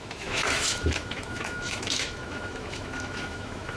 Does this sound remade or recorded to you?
remade